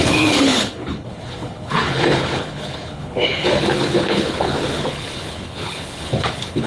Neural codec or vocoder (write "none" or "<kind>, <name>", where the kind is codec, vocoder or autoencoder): codec, HILCodec